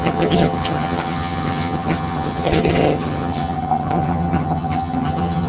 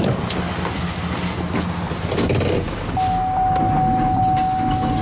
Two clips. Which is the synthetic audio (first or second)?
first